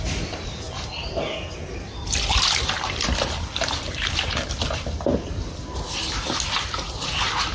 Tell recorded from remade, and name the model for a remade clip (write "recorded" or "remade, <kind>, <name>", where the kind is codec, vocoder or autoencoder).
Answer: recorded